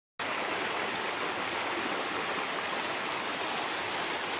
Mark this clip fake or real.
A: real